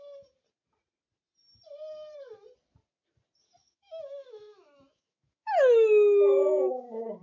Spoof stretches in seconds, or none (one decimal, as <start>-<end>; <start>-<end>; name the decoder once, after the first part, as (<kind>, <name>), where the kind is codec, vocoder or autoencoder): 3.6-7.2 (autoencoder, DAC-VAE)